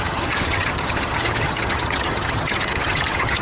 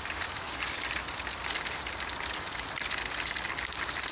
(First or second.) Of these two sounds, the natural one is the second